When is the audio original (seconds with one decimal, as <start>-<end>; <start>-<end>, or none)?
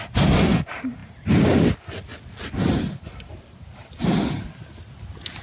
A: 0.0-5.4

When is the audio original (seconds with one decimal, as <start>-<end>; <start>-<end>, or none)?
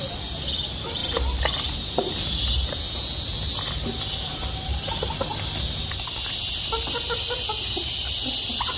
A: 0.0-8.8